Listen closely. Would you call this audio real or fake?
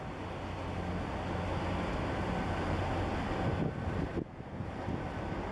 real